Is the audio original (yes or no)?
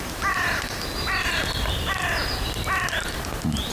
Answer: yes